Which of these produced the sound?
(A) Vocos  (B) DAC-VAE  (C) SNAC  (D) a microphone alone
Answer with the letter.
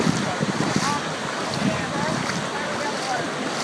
D